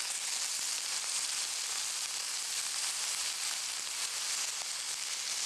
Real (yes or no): yes